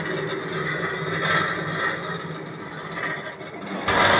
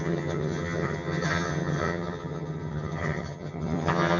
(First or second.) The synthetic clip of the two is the second